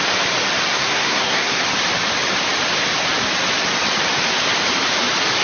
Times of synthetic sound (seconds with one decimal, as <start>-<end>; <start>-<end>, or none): 0.7-1.6